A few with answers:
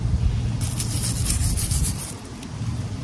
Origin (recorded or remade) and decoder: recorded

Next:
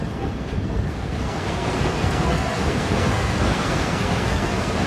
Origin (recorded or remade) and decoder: remade, codec, SNAC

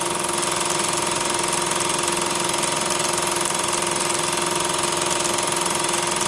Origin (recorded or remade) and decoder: recorded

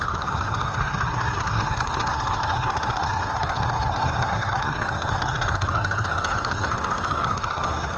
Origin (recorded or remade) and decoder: remade, codec, SNAC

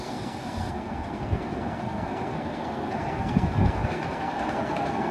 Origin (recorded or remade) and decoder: remade, codec, SNAC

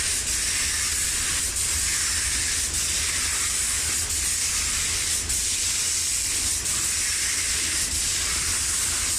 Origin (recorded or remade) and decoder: recorded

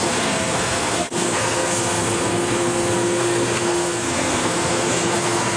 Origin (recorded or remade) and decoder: remade, codec, SNAC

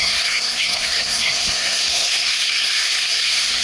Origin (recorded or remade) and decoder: remade, codec, SNAC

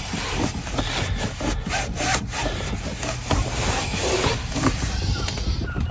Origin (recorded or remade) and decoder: recorded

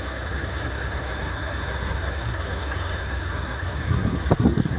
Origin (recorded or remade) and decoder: remade, codec, SNAC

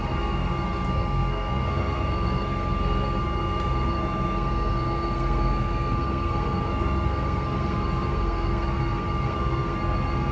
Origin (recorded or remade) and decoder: remade, codec, SNAC